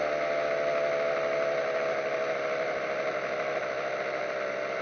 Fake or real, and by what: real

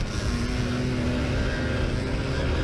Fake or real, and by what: real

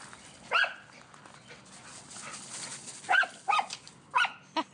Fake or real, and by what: real